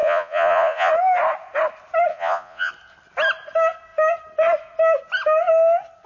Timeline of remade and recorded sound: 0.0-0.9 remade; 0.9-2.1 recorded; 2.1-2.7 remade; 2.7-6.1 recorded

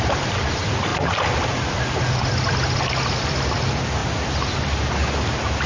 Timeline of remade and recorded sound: 0.0-5.7 recorded

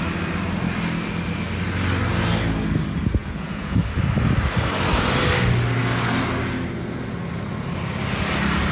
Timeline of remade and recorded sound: 0.0-3.2 recorded; 3.2-3.8 remade; 3.8-8.7 recorded

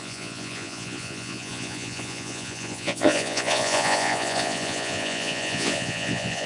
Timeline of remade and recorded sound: 0.0-6.5 remade

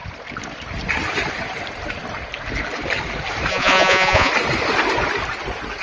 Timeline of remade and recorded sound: 0.0-3.5 recorded; 3.5-4.3 remade; 4.3-5.8 recorded

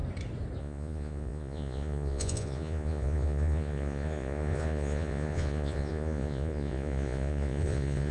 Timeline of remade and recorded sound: 0.0-0.6 recorded; 0.6-8.1 remade